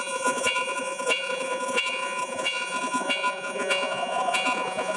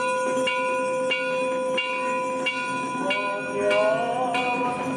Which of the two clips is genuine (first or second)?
second